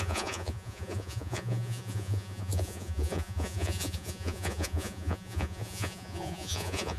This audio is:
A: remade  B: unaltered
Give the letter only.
A